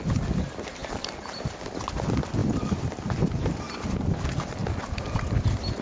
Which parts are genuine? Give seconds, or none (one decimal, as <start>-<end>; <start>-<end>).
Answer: 0.0-0.8; 1.4-2.4; 3.9-5.8